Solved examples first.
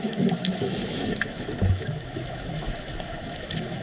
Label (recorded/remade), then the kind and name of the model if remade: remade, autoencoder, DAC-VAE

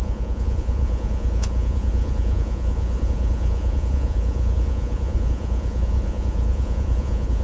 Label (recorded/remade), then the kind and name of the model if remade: remade, vocoder, Vocos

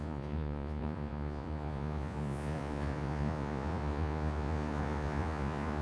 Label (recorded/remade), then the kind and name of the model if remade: remade, vocoder, Vocos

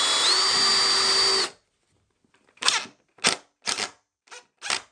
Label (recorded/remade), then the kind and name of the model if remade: recorded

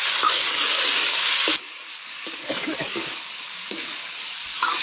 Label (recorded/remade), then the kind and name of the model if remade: remade, codec, DAC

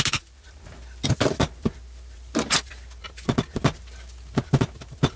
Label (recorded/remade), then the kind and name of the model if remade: recorded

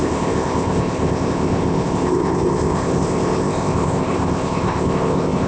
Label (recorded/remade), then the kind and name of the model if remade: remade, codec, ZipCodec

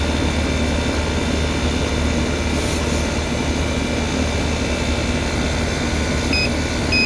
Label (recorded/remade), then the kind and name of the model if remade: recorded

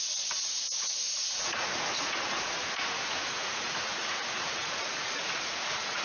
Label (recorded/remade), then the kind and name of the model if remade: remade, vocoder, Vocos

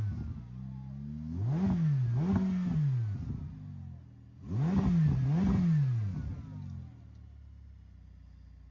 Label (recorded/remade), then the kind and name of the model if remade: recorded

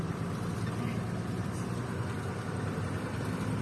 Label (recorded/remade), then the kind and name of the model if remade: recorded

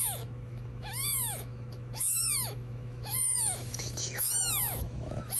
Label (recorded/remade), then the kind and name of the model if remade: remade, autoencoder, DAC-VAE